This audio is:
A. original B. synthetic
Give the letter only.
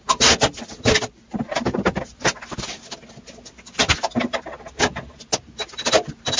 A